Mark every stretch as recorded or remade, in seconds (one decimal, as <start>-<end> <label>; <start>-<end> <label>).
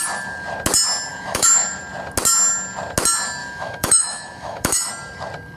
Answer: 0.0-1.1 recorded; 1.1-1.8 remade; 1.8-3.4 recorded; 3.4-4.9 remade; 4.9-5.6 recorded